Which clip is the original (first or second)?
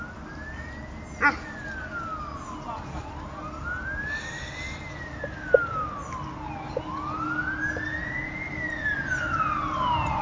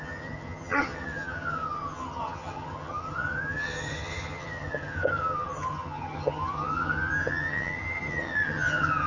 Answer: first